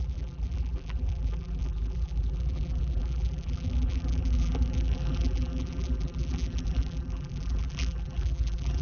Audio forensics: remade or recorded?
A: remade